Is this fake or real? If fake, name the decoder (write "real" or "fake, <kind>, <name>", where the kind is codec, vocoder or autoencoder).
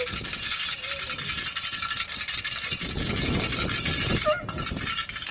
real